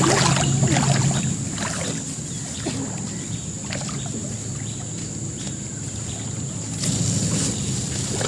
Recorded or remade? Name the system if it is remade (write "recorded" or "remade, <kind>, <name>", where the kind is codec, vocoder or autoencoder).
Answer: recorded